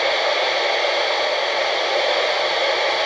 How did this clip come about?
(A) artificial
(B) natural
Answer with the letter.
B